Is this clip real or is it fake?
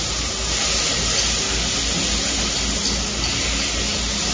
real